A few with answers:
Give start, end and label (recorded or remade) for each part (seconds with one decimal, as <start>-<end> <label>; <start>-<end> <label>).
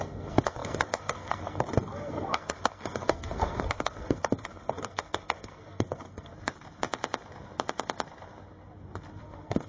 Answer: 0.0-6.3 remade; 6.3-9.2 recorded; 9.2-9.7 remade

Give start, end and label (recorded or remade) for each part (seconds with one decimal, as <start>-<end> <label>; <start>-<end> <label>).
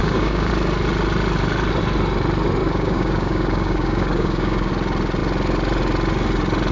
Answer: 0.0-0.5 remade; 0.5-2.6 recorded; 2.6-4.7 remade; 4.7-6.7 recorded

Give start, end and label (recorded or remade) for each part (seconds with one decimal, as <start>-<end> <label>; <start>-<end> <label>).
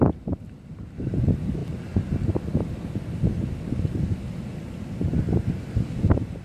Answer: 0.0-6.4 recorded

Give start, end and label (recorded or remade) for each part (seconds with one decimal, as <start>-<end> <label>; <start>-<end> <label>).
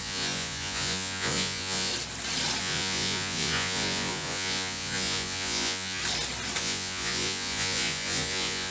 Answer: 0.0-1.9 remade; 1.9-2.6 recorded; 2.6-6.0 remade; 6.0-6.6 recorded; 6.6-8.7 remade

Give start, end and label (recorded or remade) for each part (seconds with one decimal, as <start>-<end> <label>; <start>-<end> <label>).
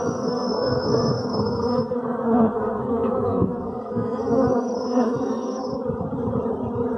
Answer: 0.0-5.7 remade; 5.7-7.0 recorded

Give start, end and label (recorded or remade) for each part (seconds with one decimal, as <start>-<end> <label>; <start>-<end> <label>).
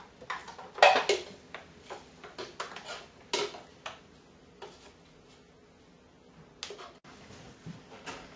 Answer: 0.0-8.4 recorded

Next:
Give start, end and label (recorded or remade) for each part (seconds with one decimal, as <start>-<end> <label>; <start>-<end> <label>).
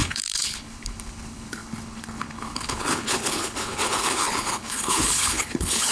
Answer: 0.0-5.9 remade